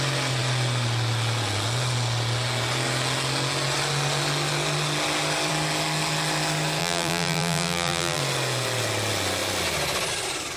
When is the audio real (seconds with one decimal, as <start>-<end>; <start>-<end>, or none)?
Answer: 0.0-6.8; 8.2-10.6